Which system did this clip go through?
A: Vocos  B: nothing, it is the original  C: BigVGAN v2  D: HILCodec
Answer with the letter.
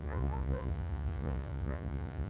A